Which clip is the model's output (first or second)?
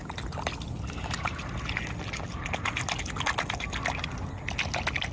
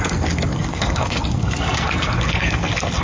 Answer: second